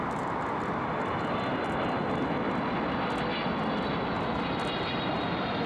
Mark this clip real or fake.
real